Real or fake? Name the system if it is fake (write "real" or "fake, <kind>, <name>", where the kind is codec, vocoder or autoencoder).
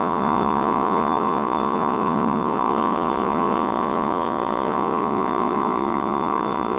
fake, vocoder, Vocos